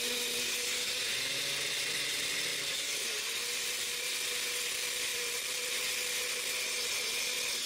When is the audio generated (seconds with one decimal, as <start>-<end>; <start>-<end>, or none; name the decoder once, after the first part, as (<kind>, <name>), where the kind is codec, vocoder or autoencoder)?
2.5-4.2 (vocoder, BigVGAN v2); 5.1-5.7